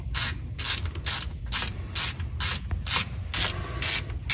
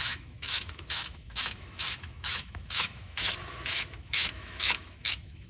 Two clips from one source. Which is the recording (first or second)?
first